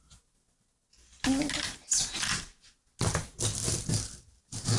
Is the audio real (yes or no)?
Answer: yes